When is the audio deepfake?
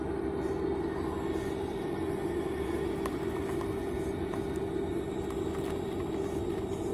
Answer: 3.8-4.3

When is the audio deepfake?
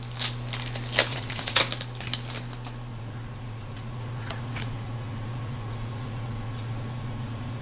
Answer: 1.1-1.6; 2.9-7.6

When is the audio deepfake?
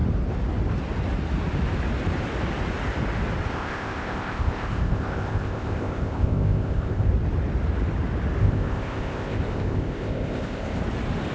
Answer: 3.5-7.1; 8.4-10.8